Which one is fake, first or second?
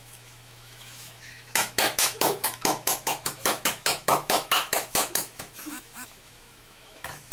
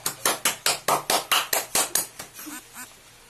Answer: first